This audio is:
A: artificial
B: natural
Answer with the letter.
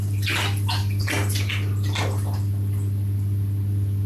B